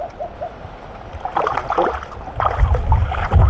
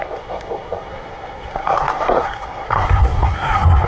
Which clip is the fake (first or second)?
second